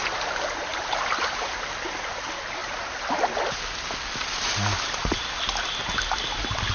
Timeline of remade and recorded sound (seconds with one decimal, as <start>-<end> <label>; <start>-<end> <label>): 0.0-0.7 recorded; 0.7-2.2 remade; 2.2-2.6 recorded; 2.6-5.4 remade; 5.4-6.7 recorded